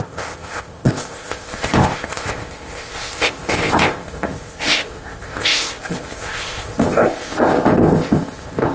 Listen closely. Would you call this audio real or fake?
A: fake